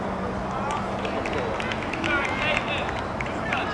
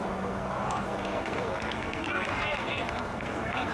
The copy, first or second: second